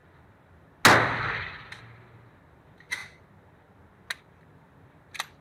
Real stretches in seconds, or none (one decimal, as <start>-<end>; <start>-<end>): 0.0-5.4